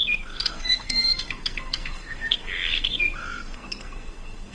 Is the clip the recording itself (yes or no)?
no